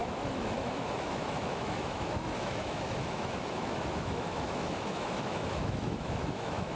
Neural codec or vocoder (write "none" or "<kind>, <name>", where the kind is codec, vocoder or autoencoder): autoencoder, DAC-VAE